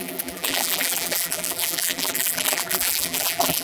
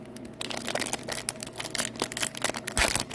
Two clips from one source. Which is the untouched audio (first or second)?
second